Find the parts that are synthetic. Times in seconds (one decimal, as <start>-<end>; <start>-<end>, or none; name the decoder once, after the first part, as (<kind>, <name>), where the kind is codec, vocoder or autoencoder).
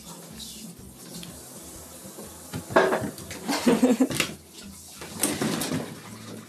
none